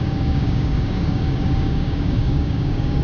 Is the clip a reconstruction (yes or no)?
yes